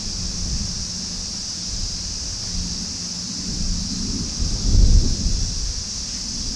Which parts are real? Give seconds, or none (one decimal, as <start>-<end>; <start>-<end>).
0.0-6.6